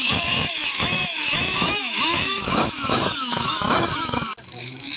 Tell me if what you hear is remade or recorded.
remade